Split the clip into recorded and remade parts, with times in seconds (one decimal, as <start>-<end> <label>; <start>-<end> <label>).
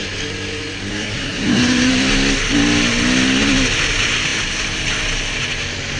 0.0-0.9 recorded; 0.9-1.9 remade; 1.9-6.0 recorded